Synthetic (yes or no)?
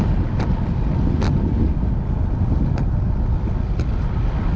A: no